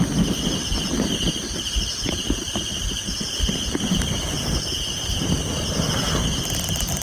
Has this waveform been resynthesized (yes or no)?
no